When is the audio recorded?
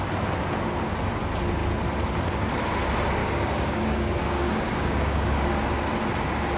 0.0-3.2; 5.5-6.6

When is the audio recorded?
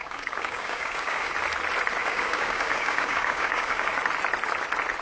1.3-2.0; 3.9-5.0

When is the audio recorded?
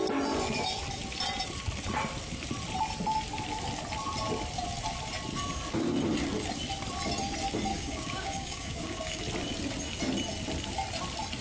0.0-7.7; 9.2-11.4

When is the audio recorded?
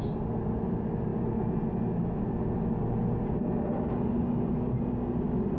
0.0-5.6